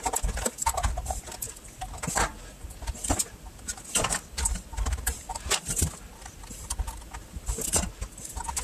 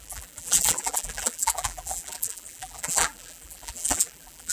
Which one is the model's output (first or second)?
second